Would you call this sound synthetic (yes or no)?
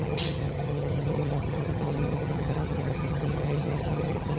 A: yes